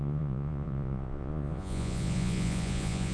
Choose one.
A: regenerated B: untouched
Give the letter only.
A